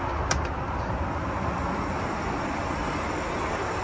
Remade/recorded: recorded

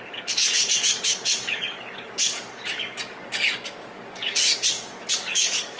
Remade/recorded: remade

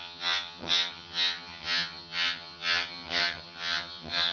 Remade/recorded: remade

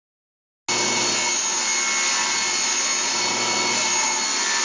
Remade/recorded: recorded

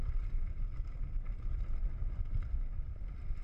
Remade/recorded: recorded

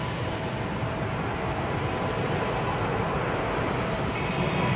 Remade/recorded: recorded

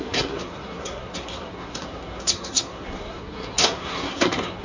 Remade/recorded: remade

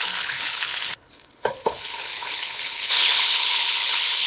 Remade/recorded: remade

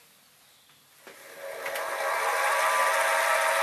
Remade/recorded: recorded